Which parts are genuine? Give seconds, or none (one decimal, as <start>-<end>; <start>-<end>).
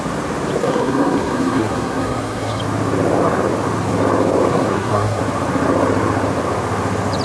0.0-0.6; 2.6-4.5; 5.2-7.2